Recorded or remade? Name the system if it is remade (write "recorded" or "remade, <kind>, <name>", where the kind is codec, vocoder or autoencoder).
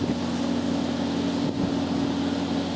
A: recorded